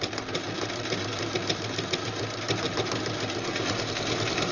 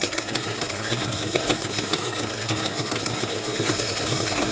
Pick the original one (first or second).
first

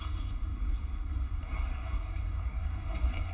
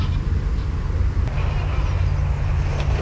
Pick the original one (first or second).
second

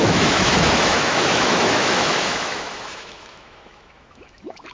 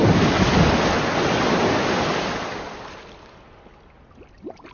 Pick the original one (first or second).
second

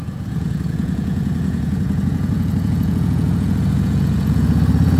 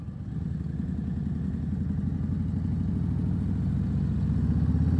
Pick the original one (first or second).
second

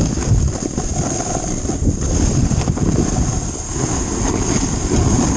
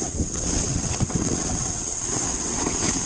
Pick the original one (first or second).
first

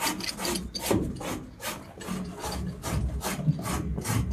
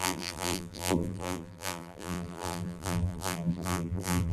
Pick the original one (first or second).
first